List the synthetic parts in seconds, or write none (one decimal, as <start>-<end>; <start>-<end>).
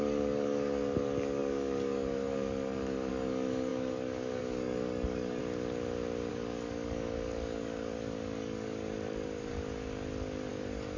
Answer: 0.0-5.4; 6.3-9.5; 10.5-11.0